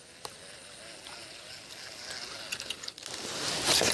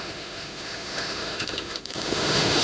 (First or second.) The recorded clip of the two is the first